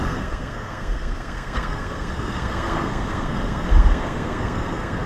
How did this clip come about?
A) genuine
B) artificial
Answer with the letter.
B